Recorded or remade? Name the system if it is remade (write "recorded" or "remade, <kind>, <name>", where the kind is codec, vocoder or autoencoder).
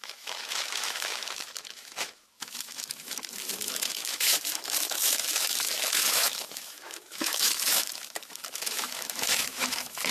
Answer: remade, autoencoder, DAC-VAE